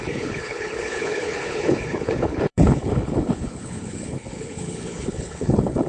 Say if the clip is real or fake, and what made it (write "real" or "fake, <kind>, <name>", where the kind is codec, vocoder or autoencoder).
fake, codec, HILCodec